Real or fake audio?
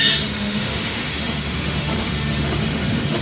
fake